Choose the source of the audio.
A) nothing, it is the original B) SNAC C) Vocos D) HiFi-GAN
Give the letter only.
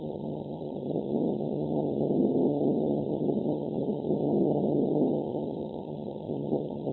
D